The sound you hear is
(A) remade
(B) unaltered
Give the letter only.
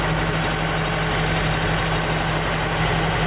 B